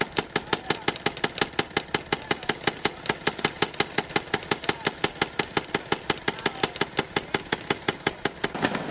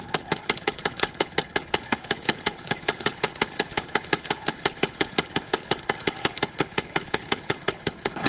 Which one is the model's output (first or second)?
second